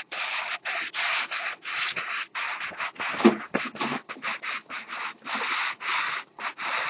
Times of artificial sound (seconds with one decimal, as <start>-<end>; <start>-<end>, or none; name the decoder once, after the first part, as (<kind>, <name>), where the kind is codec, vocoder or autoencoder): 3.9-4.7 (autoencoder, DAC-VAE)